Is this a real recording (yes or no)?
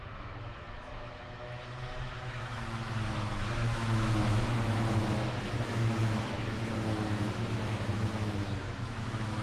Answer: no